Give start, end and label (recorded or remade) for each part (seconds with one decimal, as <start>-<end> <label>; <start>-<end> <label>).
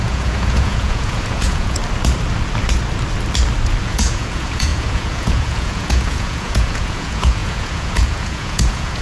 0.0-1.8 remade; 1.8-3.8 recorded; 3.8-9.0 remade